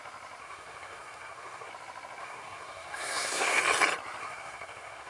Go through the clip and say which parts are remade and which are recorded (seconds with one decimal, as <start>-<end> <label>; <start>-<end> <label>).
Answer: 0.0-0.4 recorded; 0.4-1.7 remade; 1.7-2.2 recorded; 2.2-3.6 remade; 3.6-4.2 recorded; 4.2-5.1 remade